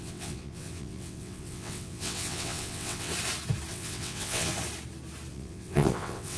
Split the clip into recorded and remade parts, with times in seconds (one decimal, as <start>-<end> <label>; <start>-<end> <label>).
0.0-3.1 remade; 3.1-3.7 recorded; 3.7-4.5 remade; 4.5-5.3 recorded; 5.3-6.4 remade